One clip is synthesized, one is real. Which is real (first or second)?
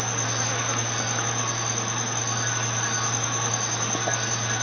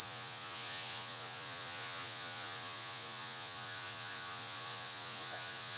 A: first